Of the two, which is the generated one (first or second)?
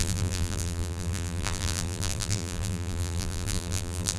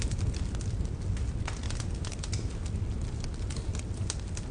first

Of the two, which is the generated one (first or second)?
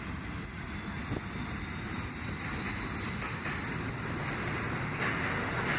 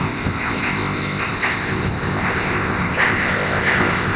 second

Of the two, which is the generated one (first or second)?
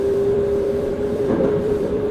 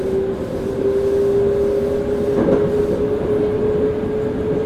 first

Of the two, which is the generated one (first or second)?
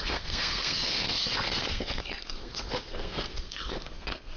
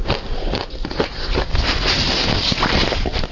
first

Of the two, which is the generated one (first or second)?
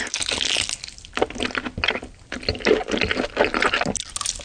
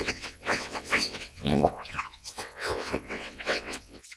second